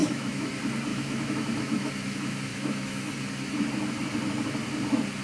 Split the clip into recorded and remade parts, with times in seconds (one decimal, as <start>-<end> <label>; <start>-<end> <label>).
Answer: 0.0-0.5 remade; 0.5-0.9 recorded; 0.9-1.9 remade; 1.9-2.5 recorded; 2.5-3.1 remade; 3.1-5.2 recorded